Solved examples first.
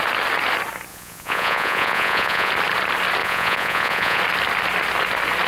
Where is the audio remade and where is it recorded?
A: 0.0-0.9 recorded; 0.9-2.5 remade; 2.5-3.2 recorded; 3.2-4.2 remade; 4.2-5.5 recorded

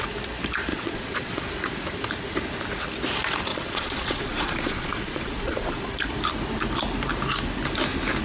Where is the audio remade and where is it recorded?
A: 0.0-0.7 recorded; 0.7-1.4 remade; 1.4-3.5 recorded; 3.5-5.9 remade; 5.9-8.2 recorded

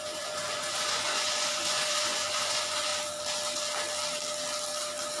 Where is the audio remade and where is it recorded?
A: 0.0-2.9 remade; 2.9-5.2 recorded

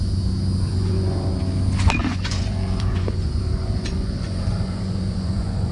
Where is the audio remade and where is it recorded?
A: 0.0-0.7 recorded; 0.7-1.3 remade; 1.3-2.0 recorded; 2.0-5.7 remade

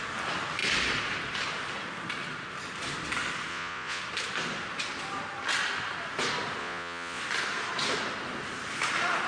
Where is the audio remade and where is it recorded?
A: 0.0-3.5 recorded; 3.5-4.0 remade; 4.0-6.6 recorded; 6.6-7.2 remade; 7.2-9.3 recorded

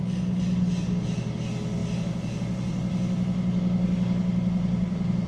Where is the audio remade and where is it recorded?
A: 0.0-5.3 recorded

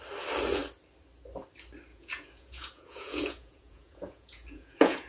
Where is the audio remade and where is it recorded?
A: 0.0-1.9 recorded; 1.9-5.1 remade

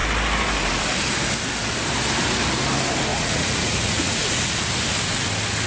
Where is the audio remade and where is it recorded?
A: 0.0-3.1 recorded; 3.1-4.4 remade; 4.4-5.7 recorded